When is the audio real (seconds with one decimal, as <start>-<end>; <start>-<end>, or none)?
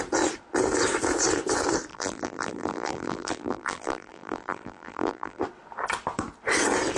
0.0-1.9; 5.4-7.0